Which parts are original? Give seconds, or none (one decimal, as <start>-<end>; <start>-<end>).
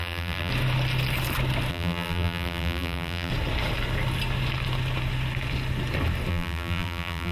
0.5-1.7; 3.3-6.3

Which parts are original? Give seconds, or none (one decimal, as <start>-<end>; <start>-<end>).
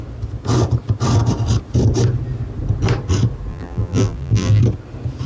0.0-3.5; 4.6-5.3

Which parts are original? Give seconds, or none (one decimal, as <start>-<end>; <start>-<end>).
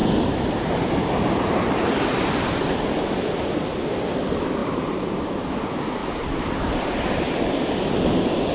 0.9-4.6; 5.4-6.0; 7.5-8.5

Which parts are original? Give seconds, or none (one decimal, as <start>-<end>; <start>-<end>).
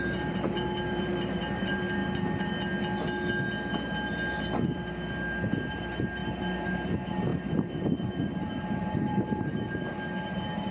2.0-5.7